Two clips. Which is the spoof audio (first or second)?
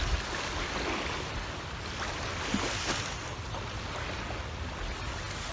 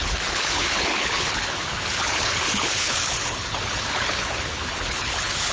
second